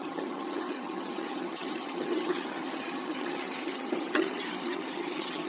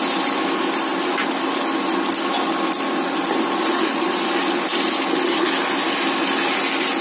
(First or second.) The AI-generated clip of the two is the first